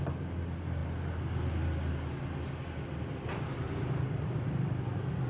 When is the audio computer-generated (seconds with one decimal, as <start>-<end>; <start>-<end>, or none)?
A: none